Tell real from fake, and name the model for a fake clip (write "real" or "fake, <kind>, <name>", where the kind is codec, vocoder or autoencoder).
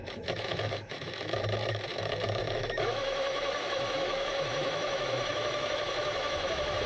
fake, autoencoder, DAC-VAE